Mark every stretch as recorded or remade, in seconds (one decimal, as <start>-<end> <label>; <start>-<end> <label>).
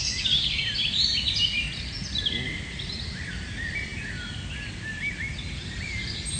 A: 0.0-6.4 recorded